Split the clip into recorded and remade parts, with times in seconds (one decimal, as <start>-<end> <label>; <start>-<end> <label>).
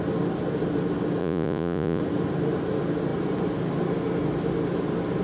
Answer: 0.0-1.2 recorded; 1.2-2.0 remade; 2.0-5.2 recorded